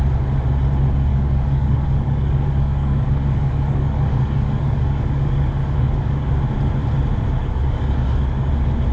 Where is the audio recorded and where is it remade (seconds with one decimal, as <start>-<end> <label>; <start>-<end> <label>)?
0.0-1.1 recorded; 1.1-6.3 remade; 6.3-7.4 recorded; 7.4-8.5 remade; 8.5-8.9 recorded